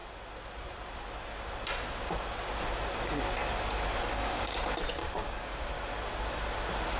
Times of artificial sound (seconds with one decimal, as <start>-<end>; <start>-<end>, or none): 4.1-4.6; 5.0-5.7